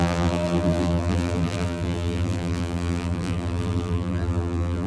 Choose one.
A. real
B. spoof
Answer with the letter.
B